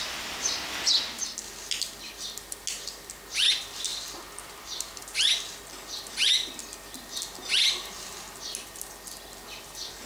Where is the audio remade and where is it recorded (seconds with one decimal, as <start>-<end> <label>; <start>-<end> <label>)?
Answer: 0.0-3.9 recorded; 3.9-5.0 remade; 5.0-10.1 recorded